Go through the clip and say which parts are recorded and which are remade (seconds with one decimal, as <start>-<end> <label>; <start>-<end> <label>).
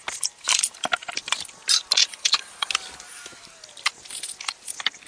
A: 0.0-2.0 recorded; 2.0-2.7 remade; 2.7-5.1 recorded